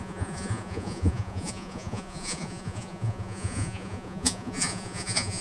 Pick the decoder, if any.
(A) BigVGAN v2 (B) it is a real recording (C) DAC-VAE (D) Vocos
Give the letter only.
D